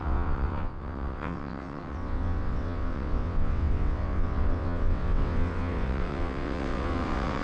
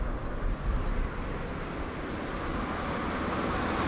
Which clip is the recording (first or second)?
second